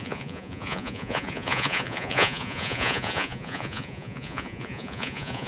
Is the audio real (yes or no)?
no